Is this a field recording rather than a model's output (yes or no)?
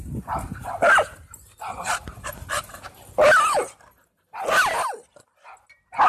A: no